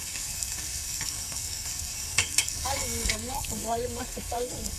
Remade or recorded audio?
remade